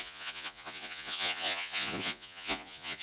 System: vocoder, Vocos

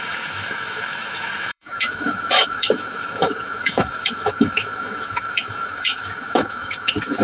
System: autoencoder, DAC-VAE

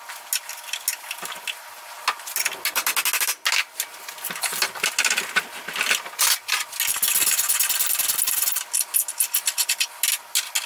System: none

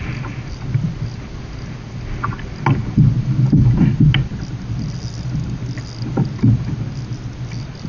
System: none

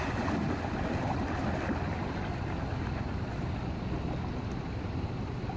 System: none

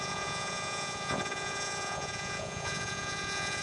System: vocoder, Vocos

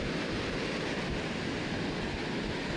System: none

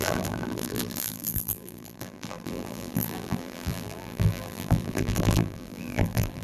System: vocoder, BigVGAN v2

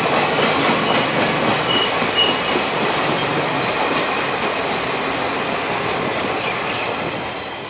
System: none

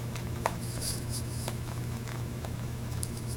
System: autoencoder, DAC-VAE